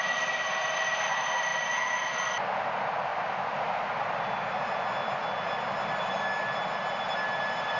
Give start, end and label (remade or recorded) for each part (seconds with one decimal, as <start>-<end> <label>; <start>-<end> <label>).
0.0-7.8 recorded